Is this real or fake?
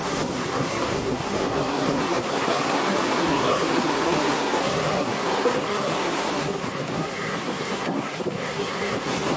fake